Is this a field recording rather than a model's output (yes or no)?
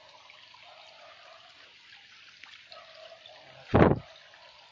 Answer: yes